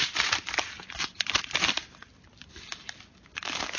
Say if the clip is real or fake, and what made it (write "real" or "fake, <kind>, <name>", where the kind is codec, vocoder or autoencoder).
real